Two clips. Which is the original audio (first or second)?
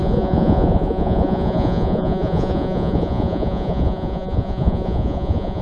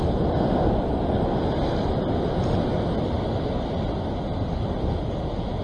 second